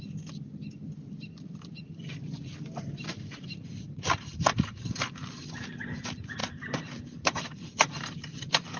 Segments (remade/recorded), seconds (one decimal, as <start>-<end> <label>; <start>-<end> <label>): 0.0-2.2 recorded; 2.2-4.1 remade; 4.1-6.4 recorded; 6.4-8.8 remade